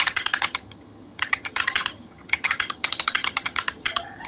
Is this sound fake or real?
fake